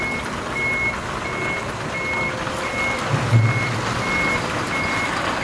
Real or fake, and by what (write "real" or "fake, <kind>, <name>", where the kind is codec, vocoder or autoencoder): real